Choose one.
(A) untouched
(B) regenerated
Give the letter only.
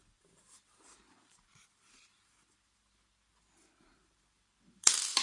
B